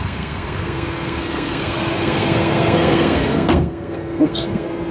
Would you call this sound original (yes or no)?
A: no